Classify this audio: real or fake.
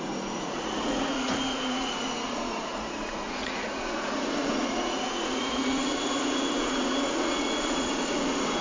fake